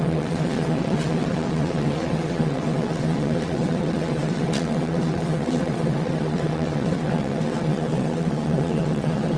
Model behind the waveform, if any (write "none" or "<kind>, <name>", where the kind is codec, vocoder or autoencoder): vocoder, WaveNeXt